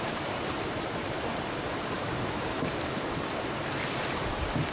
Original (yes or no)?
no